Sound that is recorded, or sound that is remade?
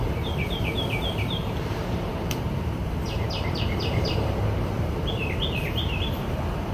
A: remade